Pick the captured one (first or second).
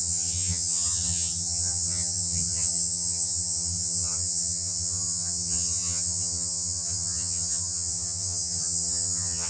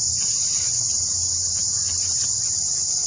second